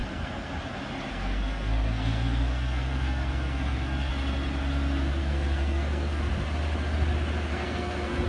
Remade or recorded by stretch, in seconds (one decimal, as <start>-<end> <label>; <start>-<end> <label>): 0.0-0.5 remade; 0.5-1.1 recorded; 1.1-4.1 remade; 4.1-5.2 recorded; 5.2-6.2 remade; 6.2-7.5 recorded; 7.5-8.3 remade